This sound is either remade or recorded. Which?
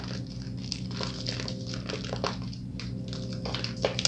recorded